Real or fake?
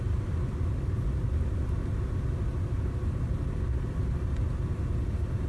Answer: real